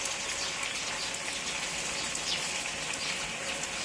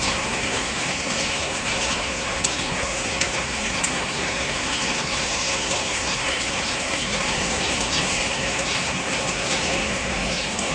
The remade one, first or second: second